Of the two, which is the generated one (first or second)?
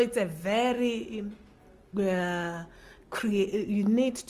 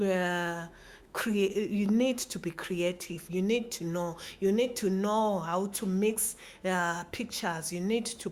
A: second